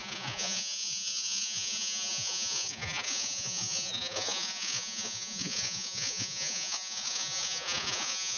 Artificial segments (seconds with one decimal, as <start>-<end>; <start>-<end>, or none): 0.0-8.4